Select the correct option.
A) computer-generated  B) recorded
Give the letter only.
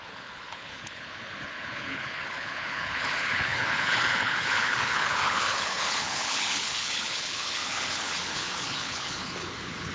A